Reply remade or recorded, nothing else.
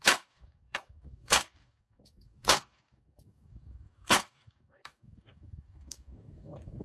remade